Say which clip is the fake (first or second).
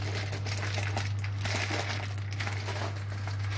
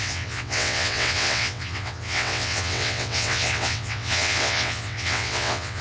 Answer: second